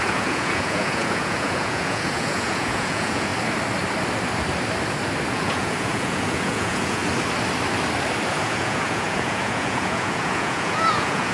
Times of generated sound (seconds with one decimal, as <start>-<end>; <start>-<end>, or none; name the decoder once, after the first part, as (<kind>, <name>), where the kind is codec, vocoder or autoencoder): 0.0-3.3 (vocoder, Vocos); 5.3-7.0; 8.3-11.3